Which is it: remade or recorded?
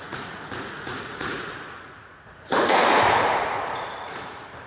remade